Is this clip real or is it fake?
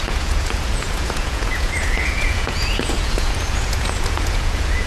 fake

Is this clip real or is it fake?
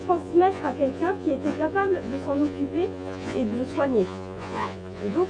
fake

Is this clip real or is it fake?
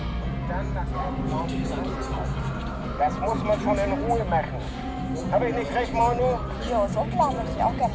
real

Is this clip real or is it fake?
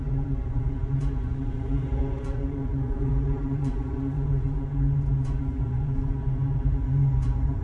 fake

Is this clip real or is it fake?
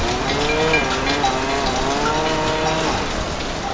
real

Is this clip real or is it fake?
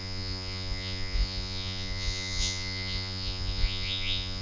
fake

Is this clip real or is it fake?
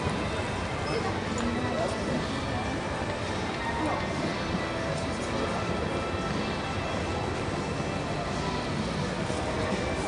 real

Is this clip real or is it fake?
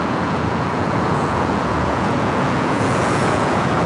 fake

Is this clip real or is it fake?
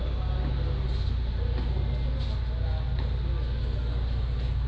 real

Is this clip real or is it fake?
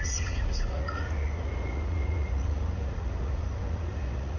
fake